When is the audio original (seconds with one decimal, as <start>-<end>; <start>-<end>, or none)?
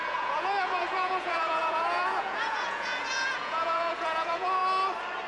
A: 4.6-5.3